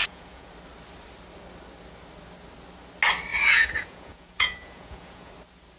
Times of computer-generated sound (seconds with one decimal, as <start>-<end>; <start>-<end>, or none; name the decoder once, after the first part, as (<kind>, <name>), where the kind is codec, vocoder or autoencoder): 0.0-0.5 (vocoder, Vocos); 3.3-5.3